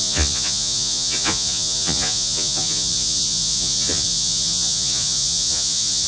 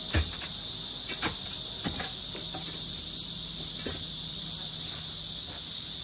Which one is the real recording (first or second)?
second